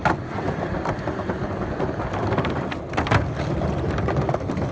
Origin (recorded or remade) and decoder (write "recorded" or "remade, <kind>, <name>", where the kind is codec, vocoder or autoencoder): recorded